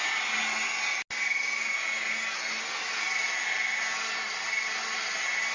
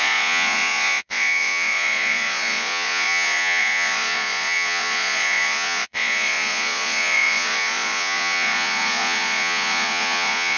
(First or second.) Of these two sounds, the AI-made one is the second